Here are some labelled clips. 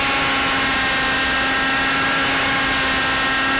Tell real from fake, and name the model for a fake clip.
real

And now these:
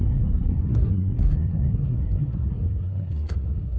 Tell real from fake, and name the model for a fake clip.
fake, codec, SNAC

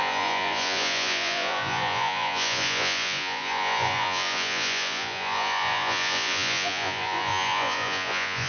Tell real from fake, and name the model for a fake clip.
fake, vocoder, Vocos